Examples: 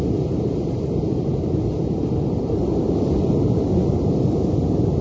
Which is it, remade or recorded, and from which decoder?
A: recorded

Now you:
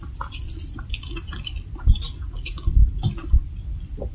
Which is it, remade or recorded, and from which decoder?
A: recorded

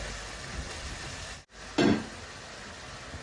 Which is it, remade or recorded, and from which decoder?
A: recorded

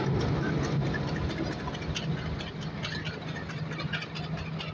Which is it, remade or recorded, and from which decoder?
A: recorded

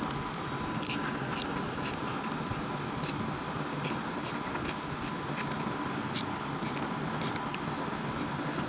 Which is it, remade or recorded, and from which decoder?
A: recorded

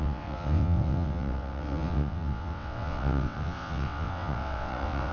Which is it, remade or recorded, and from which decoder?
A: remade, vocoder, WaveNeXt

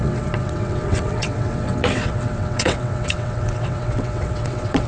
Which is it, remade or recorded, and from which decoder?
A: remade, vocoder, WaveNeXt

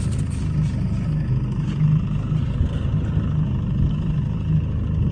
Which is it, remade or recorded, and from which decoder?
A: recorded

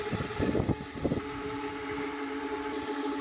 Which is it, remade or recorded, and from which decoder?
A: recorded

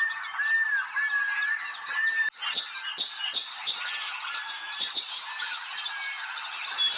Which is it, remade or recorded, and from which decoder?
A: recorded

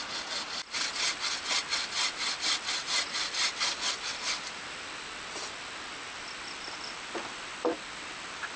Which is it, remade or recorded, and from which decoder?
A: recorded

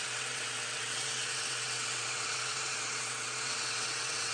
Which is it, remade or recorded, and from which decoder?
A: remade, vocoder, WaveNeXt